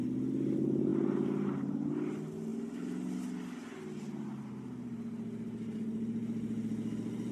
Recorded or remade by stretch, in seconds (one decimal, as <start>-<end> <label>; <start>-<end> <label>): 0.0-7.3 recorded